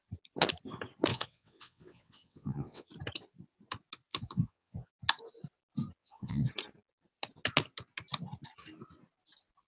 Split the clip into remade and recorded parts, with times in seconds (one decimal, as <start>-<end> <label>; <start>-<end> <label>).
0.0-1.1 recorded; 1.1-2.9 remade; 2.9-4.1 recorded; 4.1-4.9 remade; 4.9-6.0 recorded; 6.0-6.5 remade; 6.5-9.7 recorded